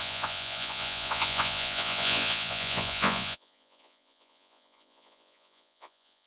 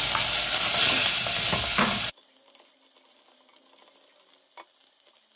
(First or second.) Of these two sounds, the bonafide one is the second